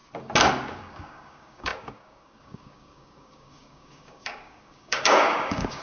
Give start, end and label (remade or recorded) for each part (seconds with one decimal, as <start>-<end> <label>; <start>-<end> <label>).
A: 0.0-0.8 recorded; 0.8-5.8 remade